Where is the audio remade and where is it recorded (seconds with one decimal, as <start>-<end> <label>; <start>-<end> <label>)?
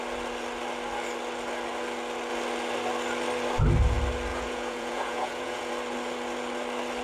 0.0-4.3 recorded; 4.3-5.7 remade; 5.7-7.0 recorded